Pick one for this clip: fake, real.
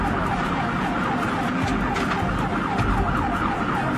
real